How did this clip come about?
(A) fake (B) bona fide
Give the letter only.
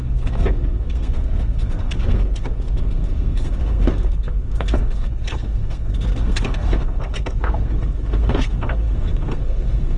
A